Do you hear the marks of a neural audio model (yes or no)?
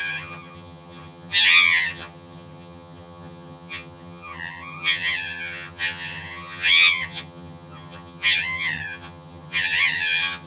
yes